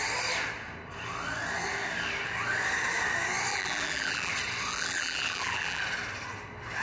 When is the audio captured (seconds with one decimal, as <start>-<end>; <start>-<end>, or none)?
0.0-3.5; 4.3-4.7; 5.8-6.8